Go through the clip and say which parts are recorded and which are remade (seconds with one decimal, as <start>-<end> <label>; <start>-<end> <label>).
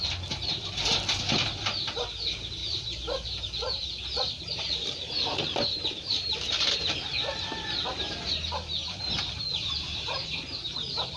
0.0-2.6 recorded; 2.6-3.5 remade; 3.5-11.2 recorded